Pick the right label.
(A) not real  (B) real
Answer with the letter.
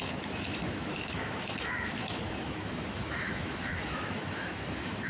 A